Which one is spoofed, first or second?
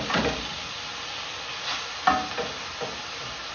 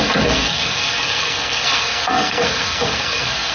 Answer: second